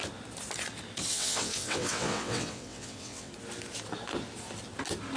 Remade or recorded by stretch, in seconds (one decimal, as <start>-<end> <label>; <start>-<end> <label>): 0.0-1.1 recorded; 1.1-3.3 remade; 3.3-5.2 recorded